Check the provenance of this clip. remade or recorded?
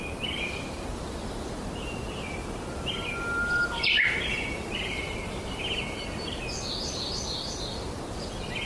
remade